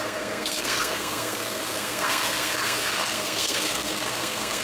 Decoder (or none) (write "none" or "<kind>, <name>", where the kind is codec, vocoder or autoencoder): codec, SNAC